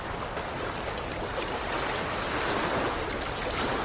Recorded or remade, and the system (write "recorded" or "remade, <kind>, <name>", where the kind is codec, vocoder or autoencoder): recorded